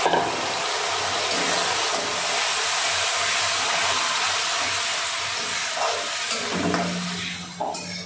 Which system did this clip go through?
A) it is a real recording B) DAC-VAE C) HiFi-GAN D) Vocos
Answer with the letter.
A